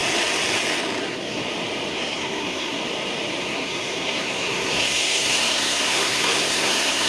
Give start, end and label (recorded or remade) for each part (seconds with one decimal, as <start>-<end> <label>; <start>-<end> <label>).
0.0-1.0 recorded; 1.0-1.4 remade; 1.4-1.9 recorded; 1.9-2.8 remade; 2.8-3.4 recorded; 3.4-7.1 remade